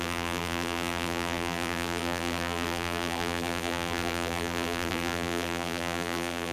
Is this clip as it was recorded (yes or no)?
no